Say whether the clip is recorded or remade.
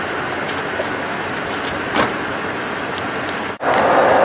recorded